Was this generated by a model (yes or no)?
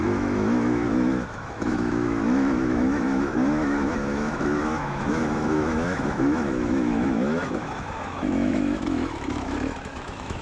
yes